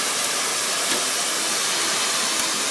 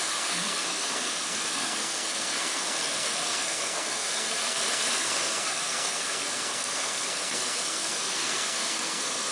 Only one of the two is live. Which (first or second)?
first